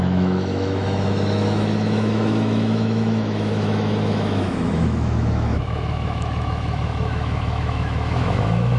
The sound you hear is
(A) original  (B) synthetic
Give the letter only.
B